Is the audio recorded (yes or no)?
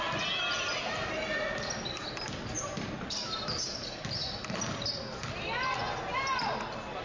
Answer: yes